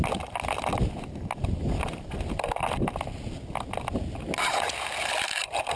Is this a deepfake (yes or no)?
no